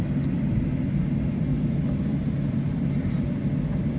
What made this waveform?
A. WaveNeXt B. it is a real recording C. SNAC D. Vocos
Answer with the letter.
B